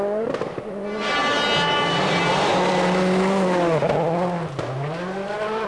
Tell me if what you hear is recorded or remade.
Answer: recorded